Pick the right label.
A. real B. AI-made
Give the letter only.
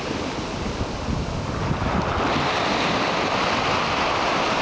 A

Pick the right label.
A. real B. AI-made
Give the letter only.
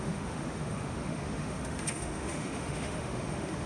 B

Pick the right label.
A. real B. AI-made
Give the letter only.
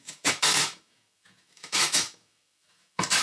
B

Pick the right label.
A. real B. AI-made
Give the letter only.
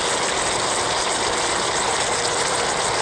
A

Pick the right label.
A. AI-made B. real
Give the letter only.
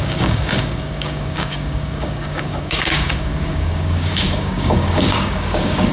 A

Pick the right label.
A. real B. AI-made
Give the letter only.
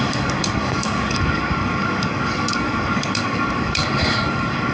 B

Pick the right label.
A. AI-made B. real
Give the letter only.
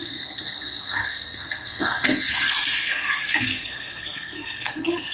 A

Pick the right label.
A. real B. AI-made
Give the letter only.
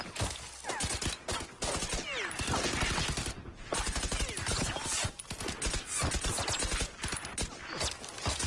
A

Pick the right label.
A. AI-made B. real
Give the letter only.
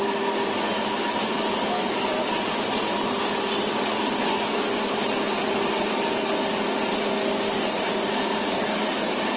B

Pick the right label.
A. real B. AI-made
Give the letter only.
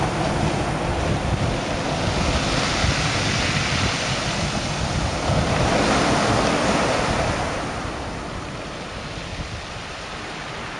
A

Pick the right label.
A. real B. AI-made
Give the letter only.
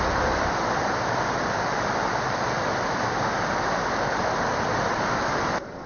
B